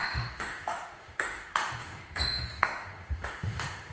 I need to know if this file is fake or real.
fake